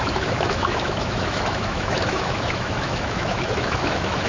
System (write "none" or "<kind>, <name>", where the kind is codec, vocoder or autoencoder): autoencoder, DAC-VAE